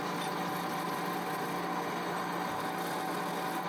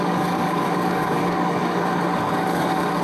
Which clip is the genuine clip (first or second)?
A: first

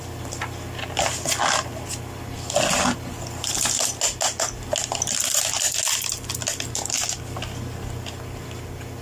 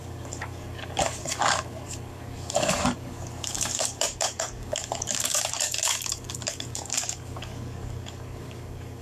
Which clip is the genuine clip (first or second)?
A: first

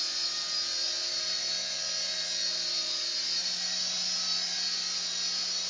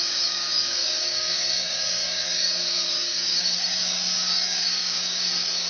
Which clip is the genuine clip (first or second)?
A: first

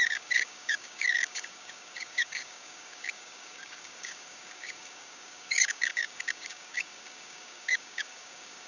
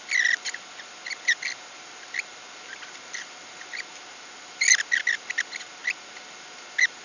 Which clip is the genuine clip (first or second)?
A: second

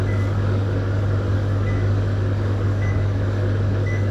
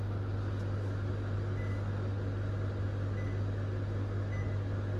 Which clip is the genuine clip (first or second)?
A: second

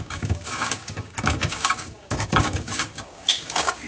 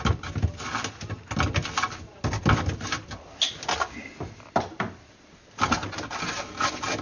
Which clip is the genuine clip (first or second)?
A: second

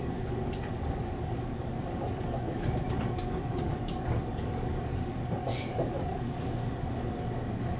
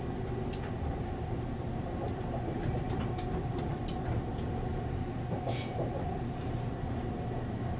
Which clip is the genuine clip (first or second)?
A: second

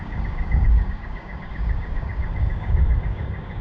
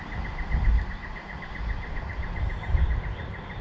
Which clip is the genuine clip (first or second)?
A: second